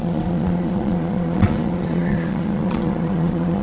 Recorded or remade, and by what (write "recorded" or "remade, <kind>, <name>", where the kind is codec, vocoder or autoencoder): remade, vocoder, Vocos